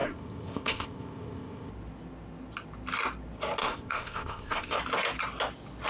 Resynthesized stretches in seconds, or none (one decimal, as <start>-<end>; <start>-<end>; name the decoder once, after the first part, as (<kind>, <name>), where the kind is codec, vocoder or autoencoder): 0.0-1.7 (codec, ZipCodec); 3.6-4.8